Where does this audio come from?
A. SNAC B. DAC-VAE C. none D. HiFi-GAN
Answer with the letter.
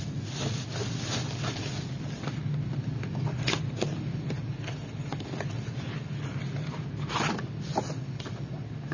C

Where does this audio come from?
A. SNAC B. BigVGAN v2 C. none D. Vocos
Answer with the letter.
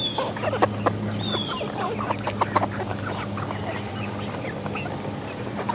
C